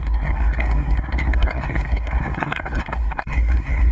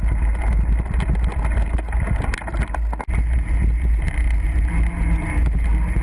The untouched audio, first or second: second